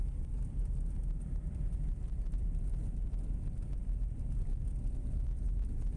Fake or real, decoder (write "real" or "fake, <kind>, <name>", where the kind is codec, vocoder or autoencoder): fake, vocoder, BigVGAN v2